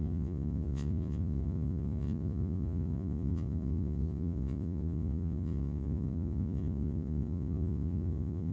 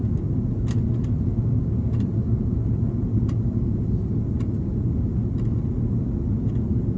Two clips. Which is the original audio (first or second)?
second